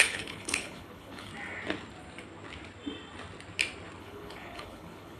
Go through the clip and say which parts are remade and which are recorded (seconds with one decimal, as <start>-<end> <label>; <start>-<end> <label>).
0.0-1.3 remade; 1.3-4.0 recorded; 4.0-5.2 remade